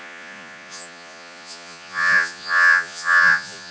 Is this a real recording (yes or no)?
no